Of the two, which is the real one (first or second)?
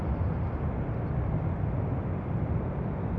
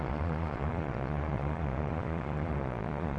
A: first